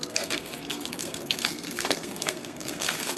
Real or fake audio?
fake